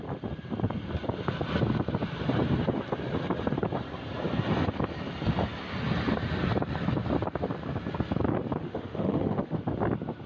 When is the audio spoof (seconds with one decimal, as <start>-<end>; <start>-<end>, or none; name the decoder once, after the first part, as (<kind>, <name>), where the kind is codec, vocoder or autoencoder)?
8.6-9.6 (autoencoder, DAC-VAE)